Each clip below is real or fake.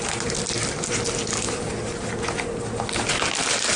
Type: real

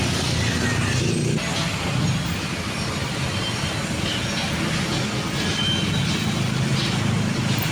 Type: real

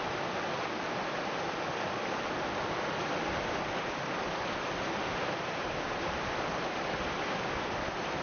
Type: real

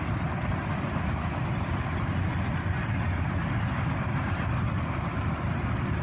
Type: real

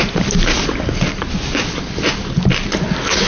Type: real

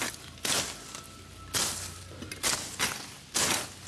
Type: real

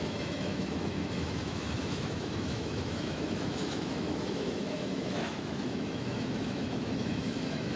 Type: fake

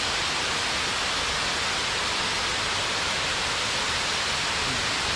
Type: real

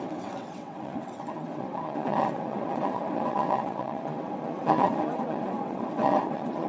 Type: fake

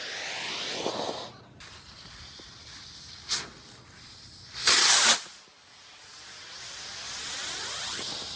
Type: real